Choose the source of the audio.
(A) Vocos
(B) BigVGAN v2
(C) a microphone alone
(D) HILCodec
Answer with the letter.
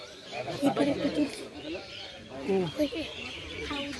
A